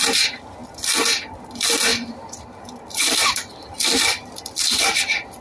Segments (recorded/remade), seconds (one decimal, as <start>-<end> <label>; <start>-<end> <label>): 0.0-0.6 recorded; 0.6-1.3 remade; 1.3-1.9 recorded; 1.9-5.4 remade